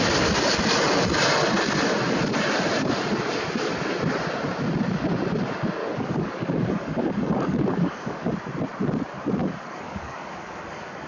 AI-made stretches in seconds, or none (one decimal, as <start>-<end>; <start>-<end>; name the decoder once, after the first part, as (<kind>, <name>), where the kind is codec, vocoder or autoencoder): 5.8-8.3 (codec, DAC); 9.4-11.1